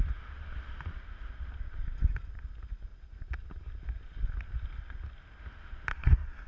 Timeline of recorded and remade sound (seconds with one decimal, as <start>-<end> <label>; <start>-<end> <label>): 0.0-5.9 recorded; 5.9-6.5 remade